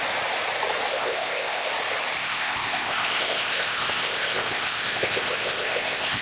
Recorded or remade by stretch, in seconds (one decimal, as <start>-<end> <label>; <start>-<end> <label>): 0.0-0.9 recorded; 0.9-1.7 remade; 1.7-2.2 recorded; 2.2-6.2 remade